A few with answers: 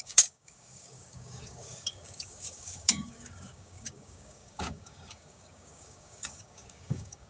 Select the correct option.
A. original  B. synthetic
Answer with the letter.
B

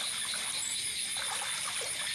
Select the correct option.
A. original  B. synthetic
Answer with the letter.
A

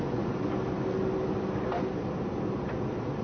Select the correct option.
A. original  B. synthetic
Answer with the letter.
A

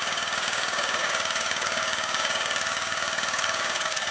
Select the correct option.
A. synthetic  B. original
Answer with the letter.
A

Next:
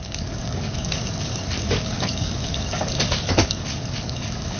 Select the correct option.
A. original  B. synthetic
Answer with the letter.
B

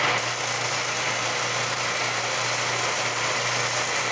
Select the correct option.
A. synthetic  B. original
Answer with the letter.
B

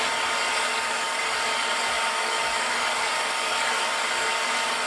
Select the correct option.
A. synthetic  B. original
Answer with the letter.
A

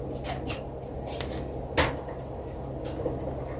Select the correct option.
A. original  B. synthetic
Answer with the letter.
A